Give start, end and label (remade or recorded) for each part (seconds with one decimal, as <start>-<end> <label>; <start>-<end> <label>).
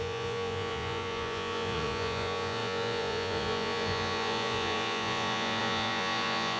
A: 0.0-6.6 remade